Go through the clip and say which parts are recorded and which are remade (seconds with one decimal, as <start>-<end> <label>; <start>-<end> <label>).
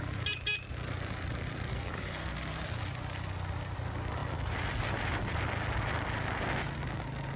0.0-1.7 recorded; 1.7-2.3 remade; 2.3-7.4 recorded